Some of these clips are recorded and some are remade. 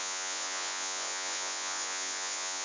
remade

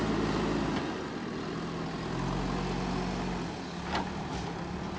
recorded